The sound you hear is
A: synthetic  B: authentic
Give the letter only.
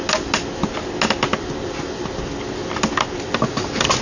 B